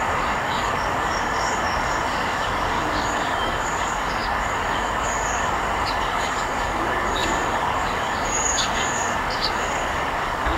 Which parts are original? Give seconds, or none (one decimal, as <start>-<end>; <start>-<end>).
none